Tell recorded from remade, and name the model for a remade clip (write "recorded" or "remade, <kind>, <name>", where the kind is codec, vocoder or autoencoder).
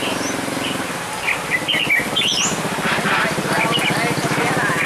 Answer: recorded